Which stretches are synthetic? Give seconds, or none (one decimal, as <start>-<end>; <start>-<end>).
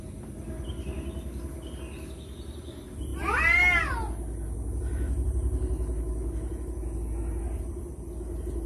none